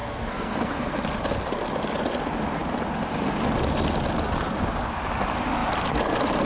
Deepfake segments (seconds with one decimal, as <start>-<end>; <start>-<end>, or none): 0.0-1.0